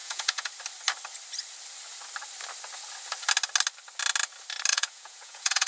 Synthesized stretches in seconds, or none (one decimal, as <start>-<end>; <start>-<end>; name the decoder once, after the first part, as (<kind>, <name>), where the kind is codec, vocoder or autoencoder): 0.0-0.5 (vocoder, Vocos); 4.7-5.7